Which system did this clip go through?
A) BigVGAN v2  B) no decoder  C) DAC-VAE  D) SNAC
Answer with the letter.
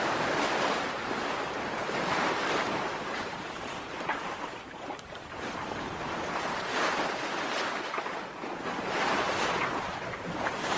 A